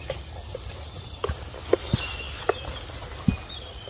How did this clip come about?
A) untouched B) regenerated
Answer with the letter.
A